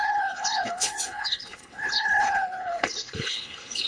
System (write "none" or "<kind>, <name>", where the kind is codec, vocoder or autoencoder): codec, HILCodec